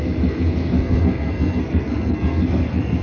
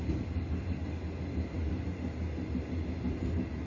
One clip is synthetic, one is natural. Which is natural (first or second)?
second